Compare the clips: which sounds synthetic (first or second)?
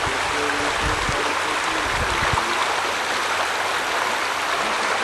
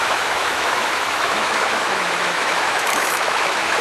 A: second